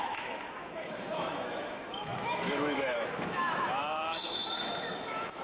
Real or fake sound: fake